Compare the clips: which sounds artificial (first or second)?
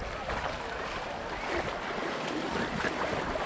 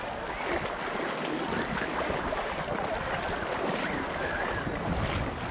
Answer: first